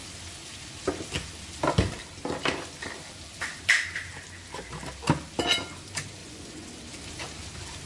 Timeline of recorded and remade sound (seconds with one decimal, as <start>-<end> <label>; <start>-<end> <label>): 0.0-6.2 recorded; 6.2-6.7 remade; 6.7-7.9 recorded